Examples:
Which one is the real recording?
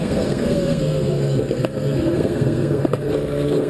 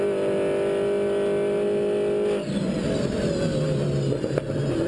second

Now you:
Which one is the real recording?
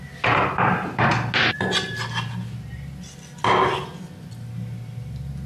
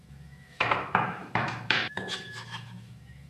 first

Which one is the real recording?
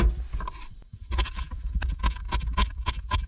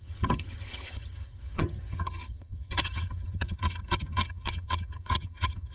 first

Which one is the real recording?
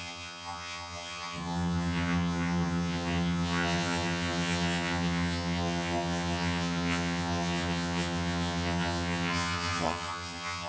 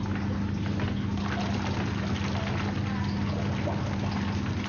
second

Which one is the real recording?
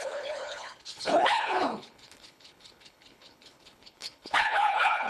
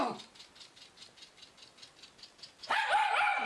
second